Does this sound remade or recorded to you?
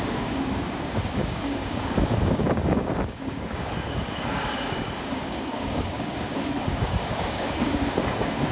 remade